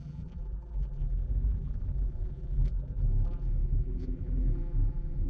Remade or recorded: remade